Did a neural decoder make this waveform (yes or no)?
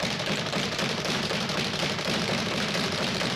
yes